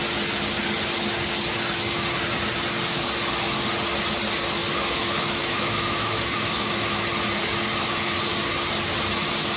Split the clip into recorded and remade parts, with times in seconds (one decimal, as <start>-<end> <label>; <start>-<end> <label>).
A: 0.0-4.6 recorded; 4.6-7.0 remade; 7.0-9.6 recorded